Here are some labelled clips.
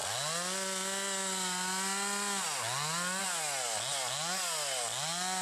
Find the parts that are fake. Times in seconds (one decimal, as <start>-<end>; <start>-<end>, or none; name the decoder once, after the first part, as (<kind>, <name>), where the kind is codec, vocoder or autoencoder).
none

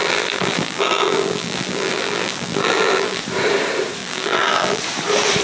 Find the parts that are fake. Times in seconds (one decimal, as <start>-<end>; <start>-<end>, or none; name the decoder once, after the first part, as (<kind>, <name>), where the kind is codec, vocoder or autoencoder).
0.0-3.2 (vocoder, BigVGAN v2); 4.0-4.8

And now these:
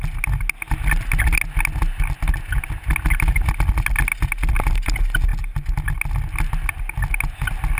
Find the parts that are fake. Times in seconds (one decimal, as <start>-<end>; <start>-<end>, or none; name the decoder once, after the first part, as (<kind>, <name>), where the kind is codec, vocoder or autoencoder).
none